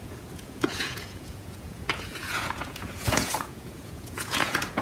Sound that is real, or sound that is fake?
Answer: fake